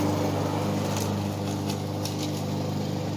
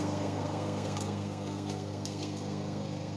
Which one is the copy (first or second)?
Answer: second